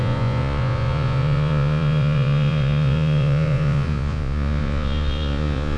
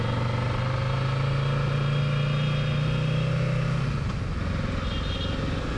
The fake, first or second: first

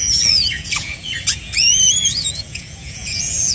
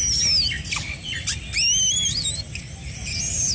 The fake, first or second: first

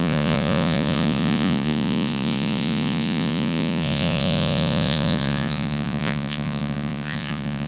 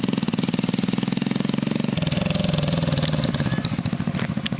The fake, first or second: first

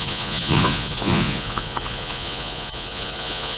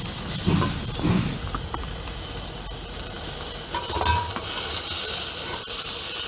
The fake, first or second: first